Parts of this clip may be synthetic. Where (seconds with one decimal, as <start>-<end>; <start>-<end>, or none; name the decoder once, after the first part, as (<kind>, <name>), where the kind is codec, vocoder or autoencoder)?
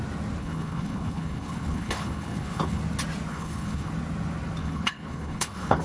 0.4-2.8 (codec, HILCodec); 3.3-3.9; 4.6-5.8